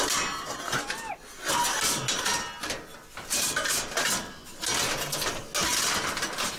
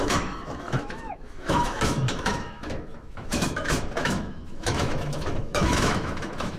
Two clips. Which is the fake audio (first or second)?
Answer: second